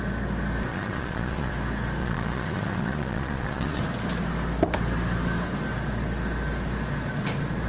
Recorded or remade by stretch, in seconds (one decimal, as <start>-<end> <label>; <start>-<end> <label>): 0.0-0.7 recorded; 0.7-1.5 remade; 1.5-2.0 recorded; 2.0-3.8 remade; 3.8-7.7 recorded